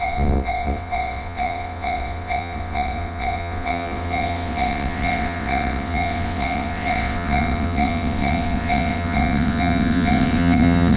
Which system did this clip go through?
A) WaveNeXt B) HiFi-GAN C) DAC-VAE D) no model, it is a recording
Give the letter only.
A